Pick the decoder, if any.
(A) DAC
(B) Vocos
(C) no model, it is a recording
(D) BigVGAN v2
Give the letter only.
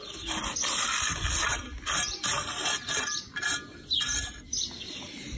C